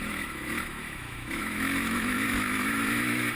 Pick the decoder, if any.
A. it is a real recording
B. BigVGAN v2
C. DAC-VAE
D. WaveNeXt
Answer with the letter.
C